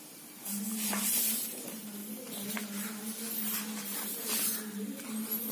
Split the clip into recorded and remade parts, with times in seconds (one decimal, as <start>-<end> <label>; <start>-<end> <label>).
0.0-5.5 recorded